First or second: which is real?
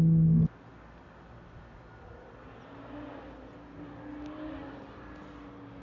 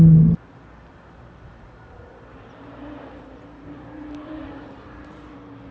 first